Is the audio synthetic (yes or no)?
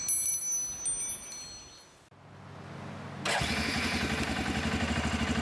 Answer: no